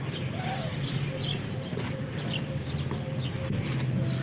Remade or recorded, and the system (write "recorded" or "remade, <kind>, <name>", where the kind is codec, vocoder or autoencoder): recorded